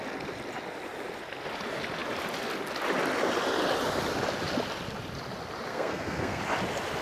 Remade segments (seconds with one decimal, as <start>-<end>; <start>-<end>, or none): 5.7-6.4